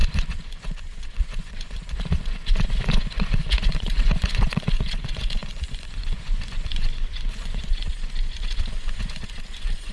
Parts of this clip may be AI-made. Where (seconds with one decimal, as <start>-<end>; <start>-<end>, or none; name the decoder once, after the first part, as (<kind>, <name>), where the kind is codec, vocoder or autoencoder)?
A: 0.0-9.9 (vocoder, Vocos)